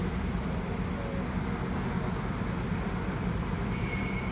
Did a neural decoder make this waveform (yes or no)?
no